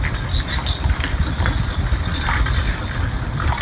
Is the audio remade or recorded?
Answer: recorded